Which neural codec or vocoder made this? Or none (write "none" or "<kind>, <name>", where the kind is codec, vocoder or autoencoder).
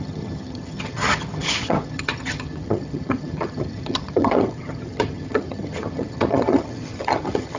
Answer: vocoder, HiFi-GAN